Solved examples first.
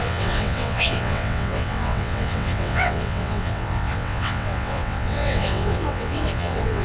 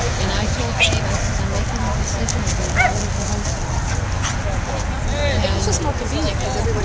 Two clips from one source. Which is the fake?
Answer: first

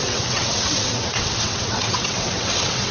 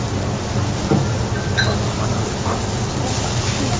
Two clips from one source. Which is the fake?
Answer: first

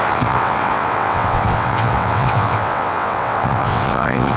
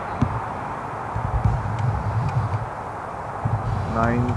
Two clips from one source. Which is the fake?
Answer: first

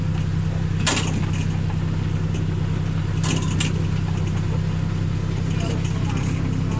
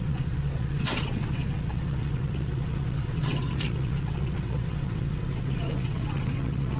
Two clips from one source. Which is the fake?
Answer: second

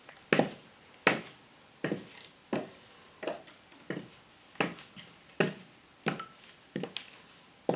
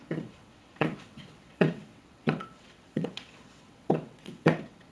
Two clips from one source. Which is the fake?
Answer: second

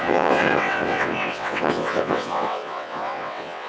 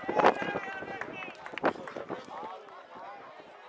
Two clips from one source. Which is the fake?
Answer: first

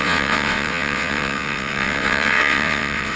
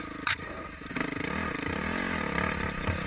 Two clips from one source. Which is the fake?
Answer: first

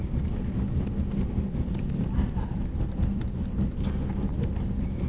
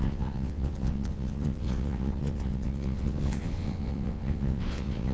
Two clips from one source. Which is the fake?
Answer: second